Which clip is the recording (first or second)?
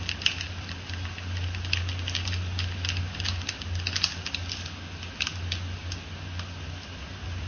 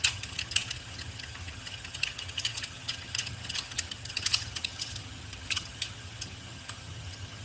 first